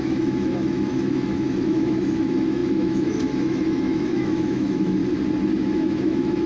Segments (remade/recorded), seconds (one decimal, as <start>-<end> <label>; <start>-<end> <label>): 0.0-5.0 remade; 5.0-5.6 recorded; 5.6-6.5 remade